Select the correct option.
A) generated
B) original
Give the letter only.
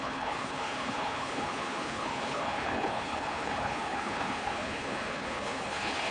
A